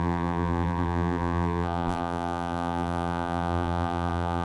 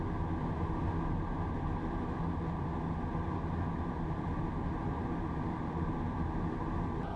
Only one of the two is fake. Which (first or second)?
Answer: first